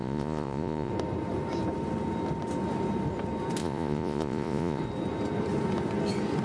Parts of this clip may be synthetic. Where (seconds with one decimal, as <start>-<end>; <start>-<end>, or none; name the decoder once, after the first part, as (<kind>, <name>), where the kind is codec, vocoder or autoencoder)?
0.0-0.9 (vocoder, Vocos); 3.6-4.8